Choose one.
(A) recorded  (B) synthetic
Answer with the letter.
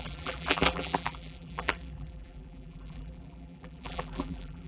B